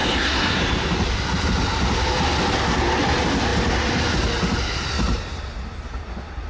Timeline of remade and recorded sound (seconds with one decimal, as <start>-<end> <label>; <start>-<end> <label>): 0.0-0.6 remade; 0.6-6.5 recorded